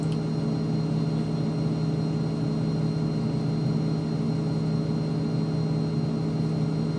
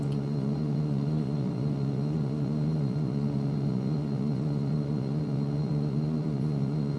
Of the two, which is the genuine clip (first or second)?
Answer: first